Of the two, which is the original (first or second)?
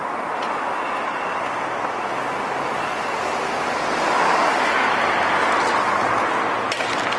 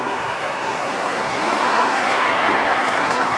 first